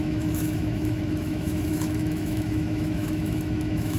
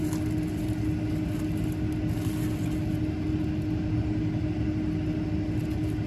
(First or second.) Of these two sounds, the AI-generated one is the first